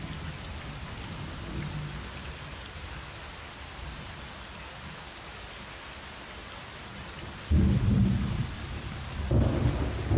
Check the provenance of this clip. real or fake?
real